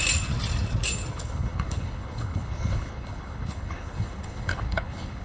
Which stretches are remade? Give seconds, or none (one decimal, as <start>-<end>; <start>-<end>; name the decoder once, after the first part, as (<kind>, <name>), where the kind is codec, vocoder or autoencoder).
1.1-5.2 (codec, HILCodec)